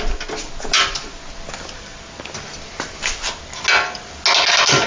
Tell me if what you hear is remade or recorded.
recorded